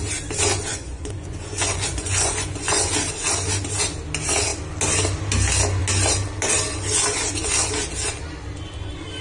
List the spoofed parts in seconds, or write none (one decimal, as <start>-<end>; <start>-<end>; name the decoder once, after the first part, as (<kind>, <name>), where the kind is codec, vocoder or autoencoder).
0.7-2.9 (vocoder, Vocos)